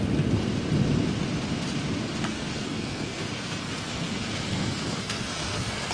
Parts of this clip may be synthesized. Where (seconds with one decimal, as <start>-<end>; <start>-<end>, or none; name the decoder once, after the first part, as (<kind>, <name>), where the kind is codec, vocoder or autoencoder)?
2.3-5.9 (codec, SNAC)